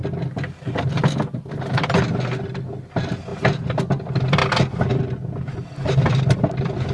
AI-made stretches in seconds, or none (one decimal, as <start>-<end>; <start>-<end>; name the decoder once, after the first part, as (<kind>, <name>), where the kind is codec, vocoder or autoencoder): none